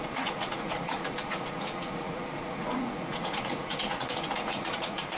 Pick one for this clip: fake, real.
fake